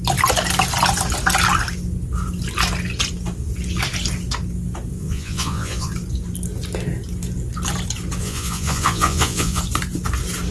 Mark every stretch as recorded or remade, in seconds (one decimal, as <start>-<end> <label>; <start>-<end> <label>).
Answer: 0.0-5.0 recorded; 5.0-5.9 remade; 5.9-8.2 recorded; 8.2-9.6 remade; 9.6-10.5 recorded